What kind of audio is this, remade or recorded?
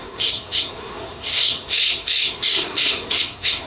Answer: remade